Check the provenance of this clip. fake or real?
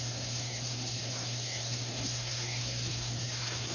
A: fake